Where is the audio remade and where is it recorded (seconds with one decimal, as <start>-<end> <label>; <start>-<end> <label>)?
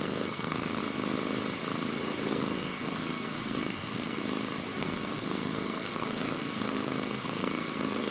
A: 0.0-0.8 remade; 0.8-2.3 recorded; 2.3-4.2 remade; 4.2-4.8 recorded; 4.8-8.1 remade